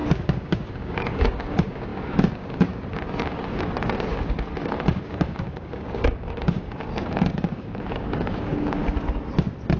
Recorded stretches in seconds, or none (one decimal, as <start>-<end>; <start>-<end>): 8.8-9.8